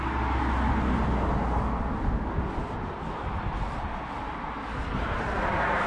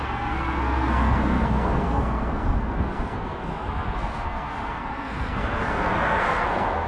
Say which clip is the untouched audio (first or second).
first